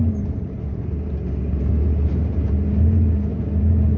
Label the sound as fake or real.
fake